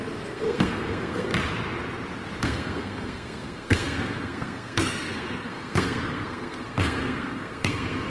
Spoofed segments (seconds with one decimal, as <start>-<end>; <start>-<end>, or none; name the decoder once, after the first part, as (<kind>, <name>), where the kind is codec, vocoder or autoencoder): 0.0-1.3 (codec, SNAC); 2.4-8.1